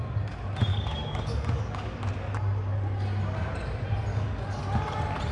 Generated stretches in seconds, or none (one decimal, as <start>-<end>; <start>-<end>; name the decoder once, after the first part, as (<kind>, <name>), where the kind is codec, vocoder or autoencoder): 0.7-2.0 (codec, DAC); 4.1-4.6

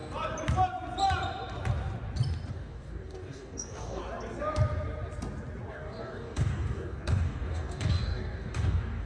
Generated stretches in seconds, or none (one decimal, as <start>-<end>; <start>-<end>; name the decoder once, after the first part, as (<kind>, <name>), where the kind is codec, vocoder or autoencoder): 2.5-4.0 (codec, DAC); 5.7-9.1

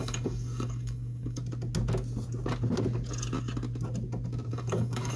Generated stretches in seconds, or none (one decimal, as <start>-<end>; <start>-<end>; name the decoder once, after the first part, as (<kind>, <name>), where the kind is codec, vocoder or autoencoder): 0.0-1.4 (codec, DAC); 4.5-5.2